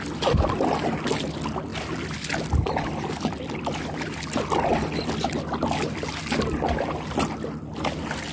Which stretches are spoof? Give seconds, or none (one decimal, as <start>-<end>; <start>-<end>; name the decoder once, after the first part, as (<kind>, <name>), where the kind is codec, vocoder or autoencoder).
none